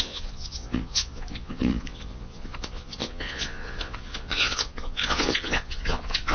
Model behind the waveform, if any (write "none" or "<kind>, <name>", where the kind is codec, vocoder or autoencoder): vocoder, Vocos